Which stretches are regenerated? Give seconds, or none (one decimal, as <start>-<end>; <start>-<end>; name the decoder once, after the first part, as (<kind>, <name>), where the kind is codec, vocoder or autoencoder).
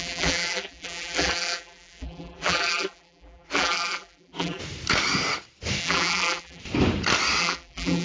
0.0-4.6 (vocoder, BigVGAN v2); 5.8-6.6; 7.4-8.0